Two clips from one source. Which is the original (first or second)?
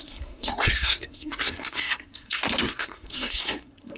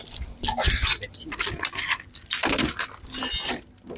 second